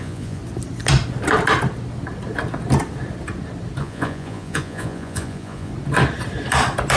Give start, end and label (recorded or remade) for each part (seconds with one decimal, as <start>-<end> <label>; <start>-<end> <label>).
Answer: 0.0-0.4 remade; 0.4-3.8 recorded; 3.8-5.7 remade; 5.7-7.0 recorded